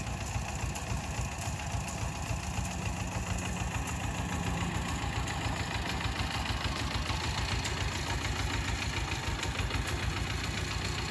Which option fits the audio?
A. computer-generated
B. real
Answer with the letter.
B